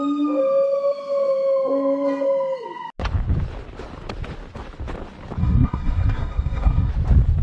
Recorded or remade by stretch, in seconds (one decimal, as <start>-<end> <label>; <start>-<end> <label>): 0.0-5.4 recorded; 5.4-6.9 remade; 6.9-7.4 recorded